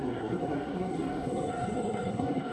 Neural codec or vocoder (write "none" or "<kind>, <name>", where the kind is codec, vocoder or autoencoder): codec, SNAC